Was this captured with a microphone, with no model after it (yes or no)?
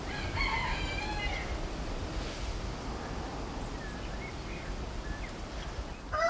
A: yes